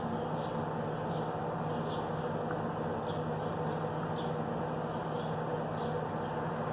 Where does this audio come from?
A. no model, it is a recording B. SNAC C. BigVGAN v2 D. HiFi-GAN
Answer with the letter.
A